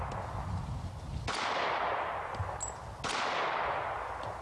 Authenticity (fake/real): real